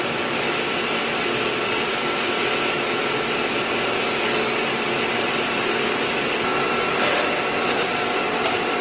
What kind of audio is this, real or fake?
real